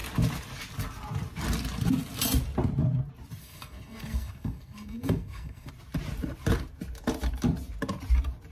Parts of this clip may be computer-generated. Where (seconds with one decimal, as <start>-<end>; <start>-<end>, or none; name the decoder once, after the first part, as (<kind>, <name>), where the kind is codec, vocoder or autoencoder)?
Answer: 3.4-5.7 (codec, SNAC)